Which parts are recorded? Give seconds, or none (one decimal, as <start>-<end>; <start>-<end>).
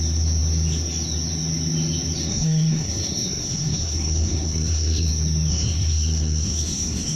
0.0-2.2; 5.1-5.5